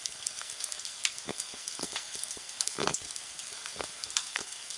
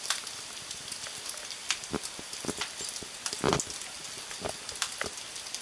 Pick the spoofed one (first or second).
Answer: first